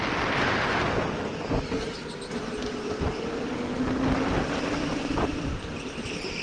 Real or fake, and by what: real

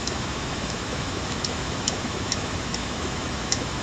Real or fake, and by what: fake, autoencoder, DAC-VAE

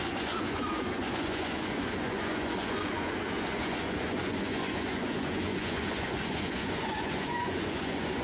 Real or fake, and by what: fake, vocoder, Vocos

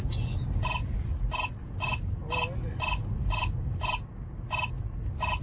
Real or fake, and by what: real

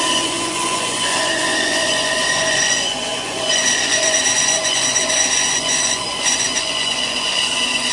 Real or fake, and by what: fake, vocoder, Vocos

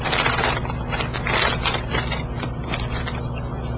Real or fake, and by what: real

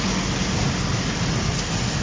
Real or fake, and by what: real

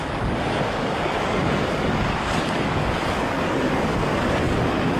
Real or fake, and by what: fake, codec, DAC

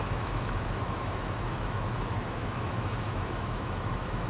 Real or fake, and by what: fake, autoencoder, DAC-VAE